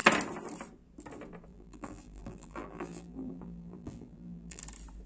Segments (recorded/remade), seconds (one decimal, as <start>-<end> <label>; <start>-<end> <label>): 0.0-1.5 recorded; 1.5-4.6 remade; 4.6-5.1 recorded